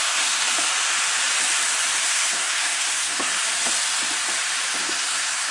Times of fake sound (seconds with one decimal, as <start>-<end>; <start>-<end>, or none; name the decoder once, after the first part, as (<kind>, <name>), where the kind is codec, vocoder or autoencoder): 0.0-0.4 (codec, SNAC); 2.0-3.3; 4.8-5.5